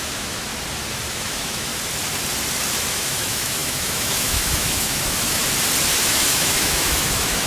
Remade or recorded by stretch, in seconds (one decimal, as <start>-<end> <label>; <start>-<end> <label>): 0.0-0.5 remade; 0.5-1.1 recorded; 1.1-1.7 remade; 1.7-2.9 recorded; 2.9-5.4 remade; 5.4-6.0 recorded; 6.0-7.5 remade